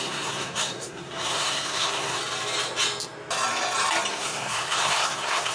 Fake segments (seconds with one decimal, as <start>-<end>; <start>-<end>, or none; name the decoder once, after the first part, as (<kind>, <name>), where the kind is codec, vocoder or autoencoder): 0.0-2.2 (codec, SNAC); 4.1-5.5